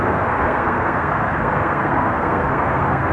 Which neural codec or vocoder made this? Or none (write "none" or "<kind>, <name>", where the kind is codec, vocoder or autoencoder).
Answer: codec, SNAC